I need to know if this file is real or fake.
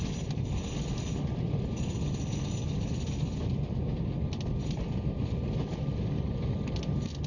real